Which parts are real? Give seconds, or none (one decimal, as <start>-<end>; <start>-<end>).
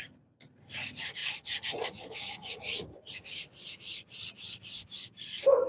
0.0-5.7